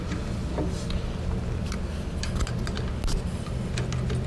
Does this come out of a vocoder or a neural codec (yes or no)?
no